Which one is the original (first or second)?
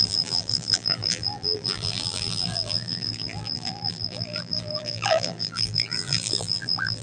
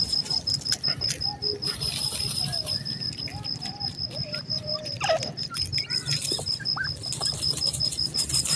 second